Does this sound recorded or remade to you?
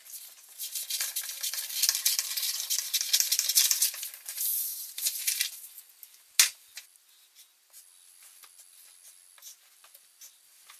recorded